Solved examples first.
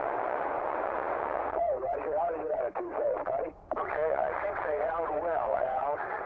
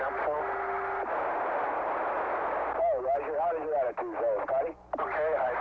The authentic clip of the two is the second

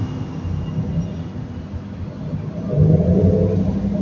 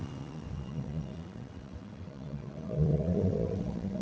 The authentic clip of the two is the first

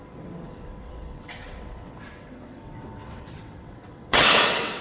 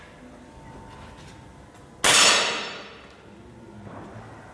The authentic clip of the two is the second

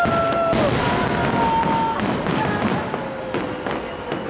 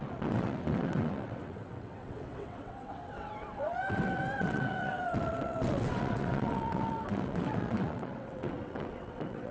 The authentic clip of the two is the first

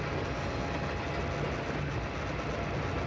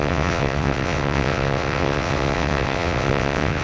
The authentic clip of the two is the first